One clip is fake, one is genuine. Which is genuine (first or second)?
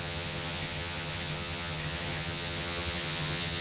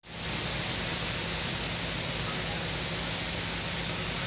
second